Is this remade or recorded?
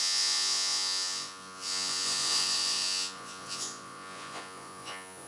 remade